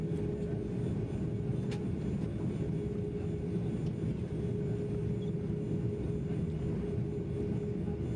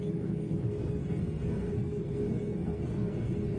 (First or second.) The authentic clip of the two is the first